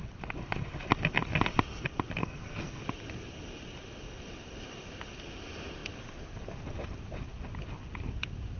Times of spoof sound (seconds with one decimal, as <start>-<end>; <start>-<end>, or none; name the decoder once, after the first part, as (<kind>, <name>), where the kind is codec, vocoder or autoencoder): 2.2-2.8 (codec, SNAC)